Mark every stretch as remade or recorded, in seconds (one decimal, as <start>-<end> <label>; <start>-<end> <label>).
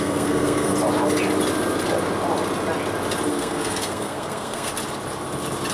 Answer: 0.0-0.7 remade; 0.7-3.3 recorded; 3.3-4.7 remade; 4.7-5.7 recorded